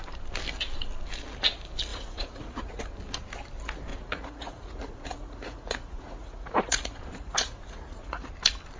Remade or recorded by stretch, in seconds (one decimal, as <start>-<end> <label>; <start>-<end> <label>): 0.0-1.9 recorded; 1.9-2.8 remade; 2.8-3.9 recorded; 3.9-8.3 remade; 8.3-8.8 recorded